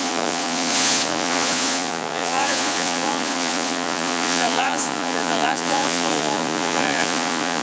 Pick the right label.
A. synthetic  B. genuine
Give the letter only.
A